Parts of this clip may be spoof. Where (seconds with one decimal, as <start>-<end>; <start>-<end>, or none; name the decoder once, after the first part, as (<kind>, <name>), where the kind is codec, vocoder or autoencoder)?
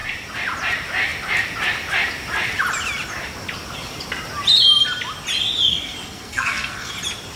5.7-6.9 (codec, SNAC)